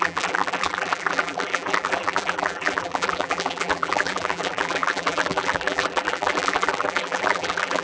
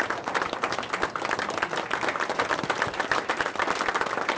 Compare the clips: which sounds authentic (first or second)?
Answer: second